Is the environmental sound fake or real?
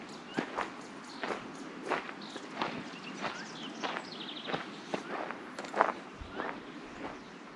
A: real